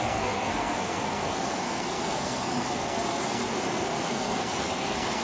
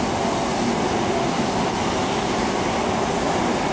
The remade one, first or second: first